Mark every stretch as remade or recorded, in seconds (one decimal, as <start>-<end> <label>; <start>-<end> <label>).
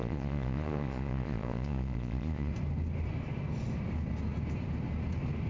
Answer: 0.0-2.5 remade; 2.5-5.5 recorded